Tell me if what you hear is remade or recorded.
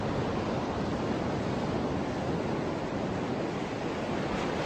recorded